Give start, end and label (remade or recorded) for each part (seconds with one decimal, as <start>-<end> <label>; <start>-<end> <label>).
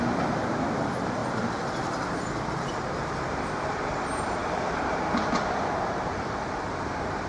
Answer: 0.0-7.3 remade